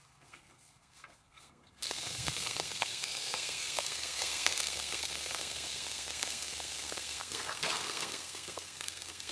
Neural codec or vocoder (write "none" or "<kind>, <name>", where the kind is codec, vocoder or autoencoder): codec, SNAC